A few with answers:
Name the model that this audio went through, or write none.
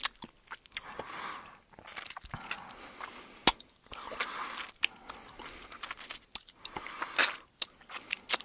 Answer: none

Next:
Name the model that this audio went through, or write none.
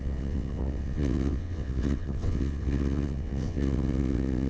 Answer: vocoder, WaveNeXt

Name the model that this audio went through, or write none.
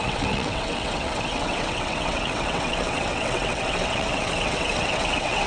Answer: vocoder, WaveNeXt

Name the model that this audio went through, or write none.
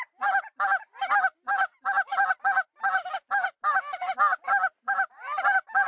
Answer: none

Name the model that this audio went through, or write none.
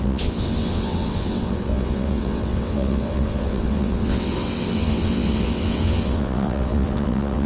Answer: vocoder, WaveNeXt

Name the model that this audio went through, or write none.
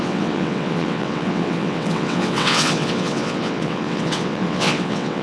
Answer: vocoder, WaveNeXt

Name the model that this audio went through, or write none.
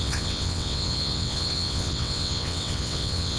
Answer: vocoder, WaveNeXt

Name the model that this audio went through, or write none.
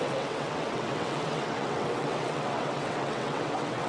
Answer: vocoder, WaveNeXt